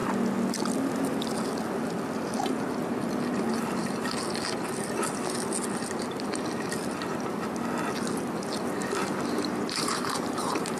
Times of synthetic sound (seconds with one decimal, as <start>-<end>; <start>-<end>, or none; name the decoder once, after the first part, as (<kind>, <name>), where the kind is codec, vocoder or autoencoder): 9.0-10.8 (vocoder, BigVGAN v2)